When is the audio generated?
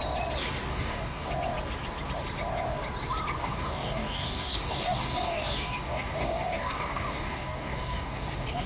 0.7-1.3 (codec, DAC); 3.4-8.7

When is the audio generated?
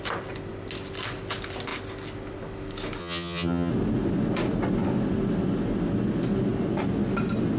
3.0-3.7 (vocoder, HiFi-GAN)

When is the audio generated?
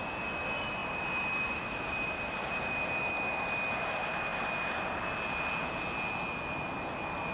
0.8-2.7 (vocoder, BigVGAN v2)